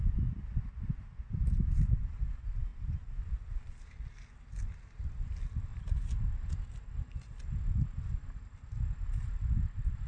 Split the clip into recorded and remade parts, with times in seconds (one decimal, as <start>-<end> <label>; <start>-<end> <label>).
0.0-10.1 recorded